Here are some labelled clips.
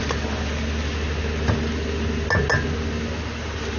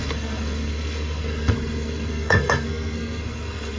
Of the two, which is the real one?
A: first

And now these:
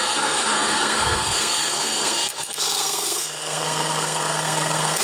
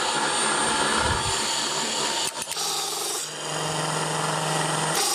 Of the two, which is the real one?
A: second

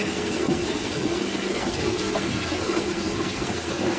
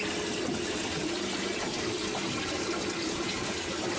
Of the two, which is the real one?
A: second